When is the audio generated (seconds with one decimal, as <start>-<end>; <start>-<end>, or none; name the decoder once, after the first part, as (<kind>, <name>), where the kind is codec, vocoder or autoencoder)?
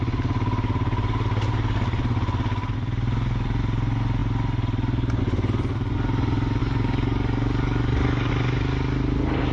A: 6.6-8.3 (codec, DAC)